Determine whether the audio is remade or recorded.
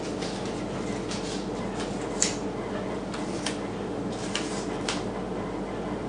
recorded